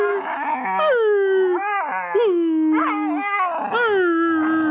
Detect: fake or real real